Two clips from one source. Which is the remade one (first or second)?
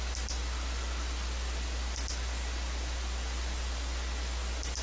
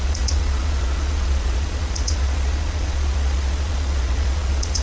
second